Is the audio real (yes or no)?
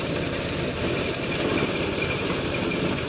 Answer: yes